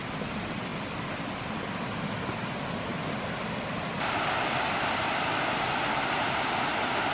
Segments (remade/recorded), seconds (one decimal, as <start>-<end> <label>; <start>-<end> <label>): 0.0-2.9 recorded; 2.9-7.1 remade